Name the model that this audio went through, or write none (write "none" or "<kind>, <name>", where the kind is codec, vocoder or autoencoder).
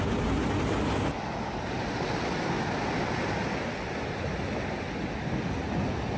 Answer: none